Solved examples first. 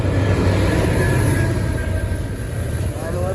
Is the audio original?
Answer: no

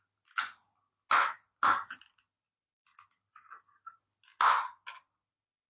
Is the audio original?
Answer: yes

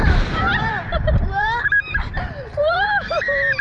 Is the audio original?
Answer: no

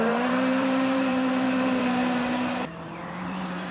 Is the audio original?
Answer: no